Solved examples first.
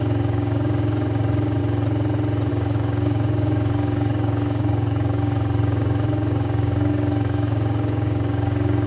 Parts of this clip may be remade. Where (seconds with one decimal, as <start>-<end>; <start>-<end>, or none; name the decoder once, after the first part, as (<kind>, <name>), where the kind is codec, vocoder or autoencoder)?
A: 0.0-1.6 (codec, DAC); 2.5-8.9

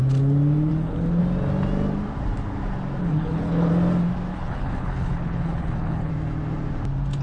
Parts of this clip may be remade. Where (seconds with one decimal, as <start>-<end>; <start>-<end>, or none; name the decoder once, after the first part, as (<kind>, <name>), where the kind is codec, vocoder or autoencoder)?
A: 0.7-1.2 (codec, HILCodec); 3.0-3.7; 4.3-6.1

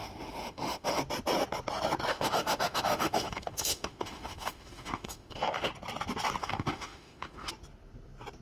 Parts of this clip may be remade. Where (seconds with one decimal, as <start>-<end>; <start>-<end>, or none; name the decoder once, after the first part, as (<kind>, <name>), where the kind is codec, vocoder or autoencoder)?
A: 0.0-1.0 (autoencoder, DAC-VAE); 2.1-5.7; 6.4-7.5

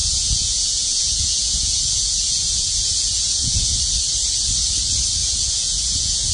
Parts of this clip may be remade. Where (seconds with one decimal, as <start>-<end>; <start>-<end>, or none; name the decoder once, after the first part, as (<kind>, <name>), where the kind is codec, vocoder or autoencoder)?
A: 0.0-3.8 (vocoder, Vocos); 5.2-6.3